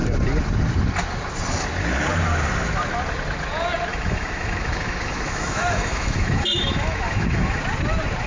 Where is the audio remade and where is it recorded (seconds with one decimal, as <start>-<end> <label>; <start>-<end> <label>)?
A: 0.0-3.9 recorded; 3.9-7.6 remade; 7.6-8.3 recorded